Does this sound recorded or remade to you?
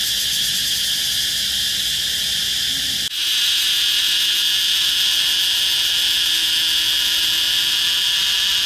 recorded